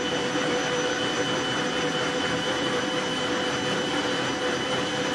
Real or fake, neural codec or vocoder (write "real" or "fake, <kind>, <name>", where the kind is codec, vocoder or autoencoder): fake, vocoder, BigVGAN v2